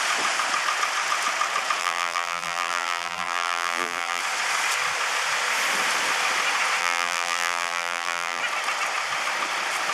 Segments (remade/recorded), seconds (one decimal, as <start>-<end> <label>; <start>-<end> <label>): 0.0-1.8 recorded; 1.8-4.2 remade; 4.2-6.8 recorded; 6.8-8.4 remade; 8.4-9.9 recorded